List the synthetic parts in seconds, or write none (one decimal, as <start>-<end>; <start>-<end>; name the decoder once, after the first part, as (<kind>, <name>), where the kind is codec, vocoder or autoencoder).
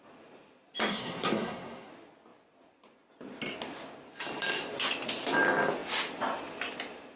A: 0.9-1.9 (codec, SNAC)